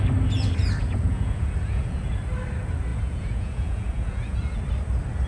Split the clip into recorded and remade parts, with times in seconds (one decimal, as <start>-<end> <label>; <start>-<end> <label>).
0.0-0.8 recorded; 0.8-2.1 remade; 2.1-2.9 recorded; 2.9-4.6 remade; 4.6-5.3 recorded